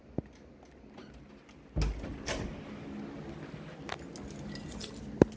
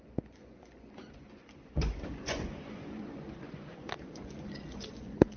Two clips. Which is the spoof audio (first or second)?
second